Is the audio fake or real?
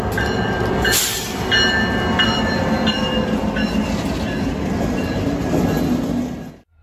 real